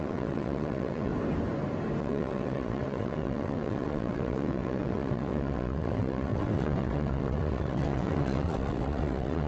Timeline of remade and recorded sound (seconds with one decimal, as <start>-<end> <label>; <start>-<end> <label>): 0.0-1.1 remade; 1.1-2.0 recorded; 2.0-9.5 remade